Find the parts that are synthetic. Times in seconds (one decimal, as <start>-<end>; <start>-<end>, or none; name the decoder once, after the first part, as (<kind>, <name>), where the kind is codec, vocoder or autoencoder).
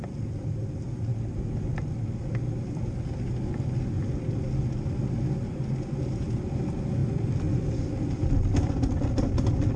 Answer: none